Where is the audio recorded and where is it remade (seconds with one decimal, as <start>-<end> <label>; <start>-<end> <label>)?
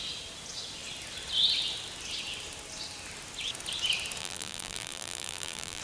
0.0-4.2 recorded; 4.2-5.8 remade